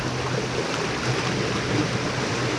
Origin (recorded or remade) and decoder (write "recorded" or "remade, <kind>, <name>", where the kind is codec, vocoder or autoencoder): recorded